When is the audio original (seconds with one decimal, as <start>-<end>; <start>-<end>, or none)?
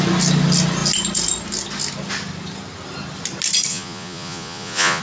0.0-3.7